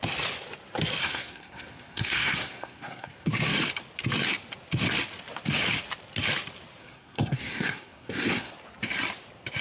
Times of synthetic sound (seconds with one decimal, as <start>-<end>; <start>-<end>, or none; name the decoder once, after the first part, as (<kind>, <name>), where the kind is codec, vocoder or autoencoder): 1.0-3.3 (codec, SNAC); 6.8-8.5